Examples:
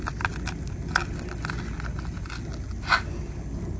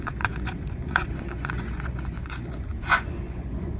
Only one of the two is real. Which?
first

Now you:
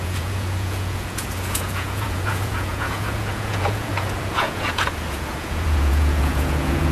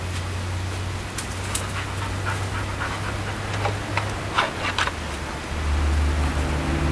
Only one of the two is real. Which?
second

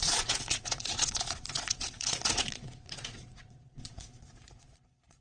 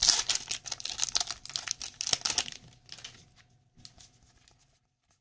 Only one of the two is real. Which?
second